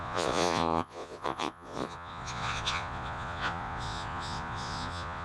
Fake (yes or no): yes